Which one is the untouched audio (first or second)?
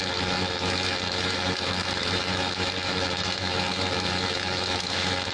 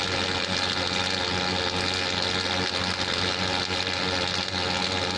second